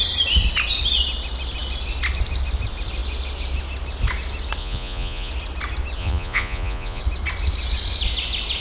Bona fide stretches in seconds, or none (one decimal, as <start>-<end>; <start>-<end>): 0.0-4.6; 5.3-6.0; 7.0-8.6